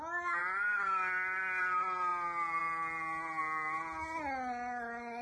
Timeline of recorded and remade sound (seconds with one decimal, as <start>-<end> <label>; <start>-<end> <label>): 0.0-5.2 recorded